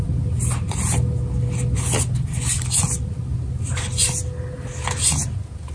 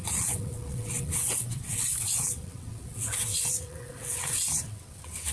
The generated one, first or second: second